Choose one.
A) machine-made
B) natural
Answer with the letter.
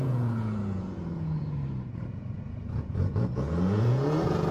A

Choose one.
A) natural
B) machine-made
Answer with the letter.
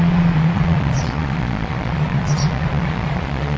B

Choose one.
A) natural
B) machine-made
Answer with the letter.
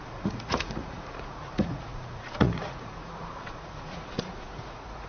B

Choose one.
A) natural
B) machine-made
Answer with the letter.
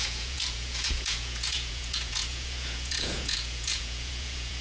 B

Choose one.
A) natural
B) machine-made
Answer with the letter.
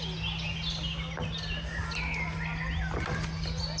A